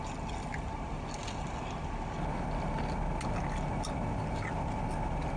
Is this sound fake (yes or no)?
no